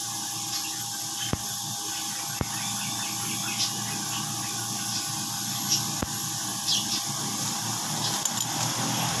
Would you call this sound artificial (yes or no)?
no